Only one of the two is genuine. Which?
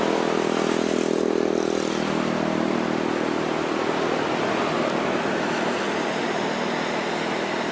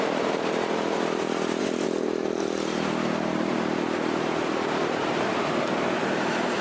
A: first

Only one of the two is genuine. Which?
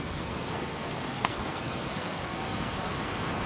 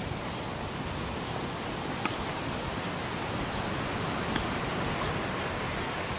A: second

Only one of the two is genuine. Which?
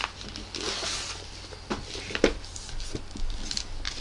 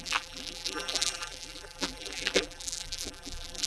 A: first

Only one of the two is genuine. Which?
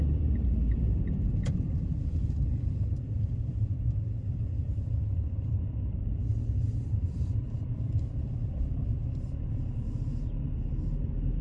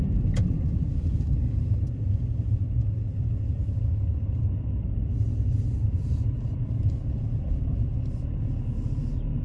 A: second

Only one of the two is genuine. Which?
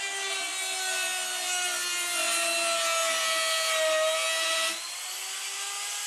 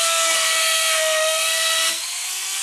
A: first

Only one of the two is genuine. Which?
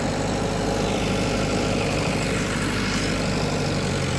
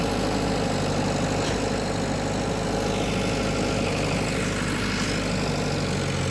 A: second